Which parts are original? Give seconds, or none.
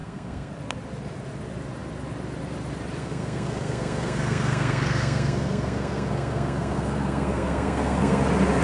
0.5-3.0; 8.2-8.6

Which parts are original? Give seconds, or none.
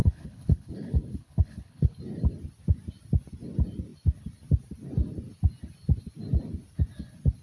2.0-7.4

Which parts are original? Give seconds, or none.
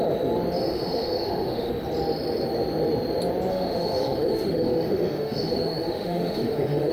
0.0-0.6; 1.7-3.5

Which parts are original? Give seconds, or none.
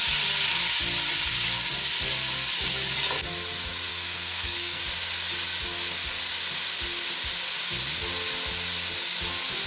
0.0-3.9; 4.8-9.7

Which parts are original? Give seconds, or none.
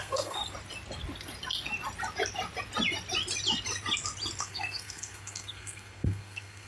0.4-4.4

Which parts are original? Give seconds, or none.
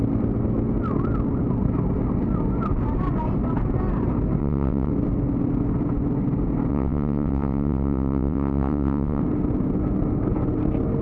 0.0-4.4; 4.9-6.7; 9.2-11.0